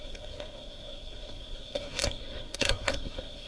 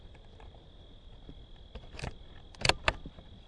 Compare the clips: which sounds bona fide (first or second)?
second